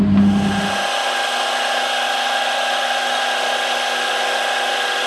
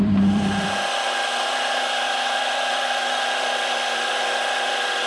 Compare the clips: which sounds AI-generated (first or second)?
second